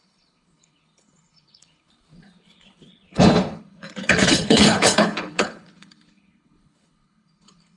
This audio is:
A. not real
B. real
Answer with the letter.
A